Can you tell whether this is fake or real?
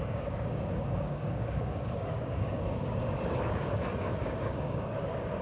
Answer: fake